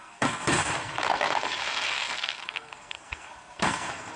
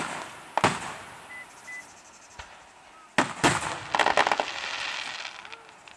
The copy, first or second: first